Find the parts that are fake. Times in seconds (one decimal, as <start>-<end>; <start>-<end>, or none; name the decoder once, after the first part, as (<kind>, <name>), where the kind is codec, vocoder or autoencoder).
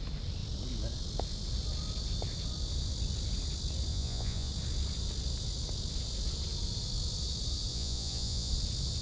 3.9-4.5 (vocoder, Vocos); 7.7-8.5